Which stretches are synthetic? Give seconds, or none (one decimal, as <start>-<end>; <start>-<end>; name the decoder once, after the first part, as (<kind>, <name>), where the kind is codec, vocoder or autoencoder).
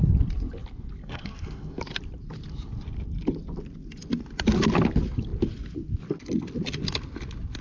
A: 1.0-1.8 (codec, SNAC)